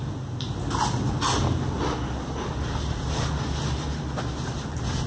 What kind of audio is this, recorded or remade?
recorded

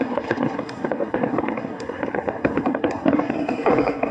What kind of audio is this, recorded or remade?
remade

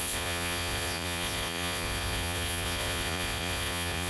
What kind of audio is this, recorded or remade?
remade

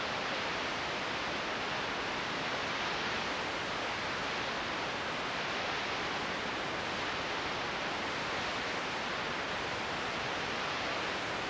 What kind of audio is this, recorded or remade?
recorded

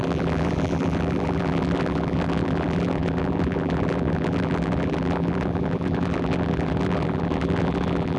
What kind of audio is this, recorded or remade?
remade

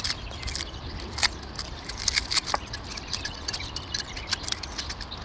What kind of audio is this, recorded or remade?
recorded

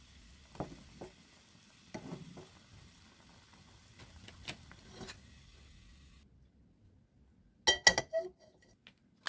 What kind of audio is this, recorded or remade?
recorded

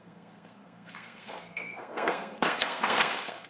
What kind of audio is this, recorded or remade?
remade